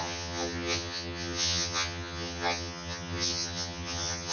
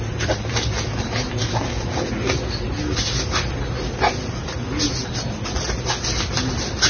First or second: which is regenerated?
first